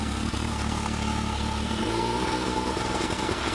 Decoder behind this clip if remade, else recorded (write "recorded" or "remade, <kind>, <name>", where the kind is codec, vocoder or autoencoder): remade, codec, SNAC